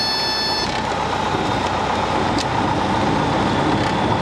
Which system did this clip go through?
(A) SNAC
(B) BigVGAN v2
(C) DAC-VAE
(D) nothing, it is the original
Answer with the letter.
D